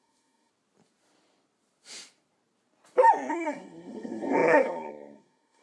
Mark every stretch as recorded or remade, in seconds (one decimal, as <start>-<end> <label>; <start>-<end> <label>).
0.0-0.5 remade; 0.5-3.3 recorded; 3.3-5.6 remade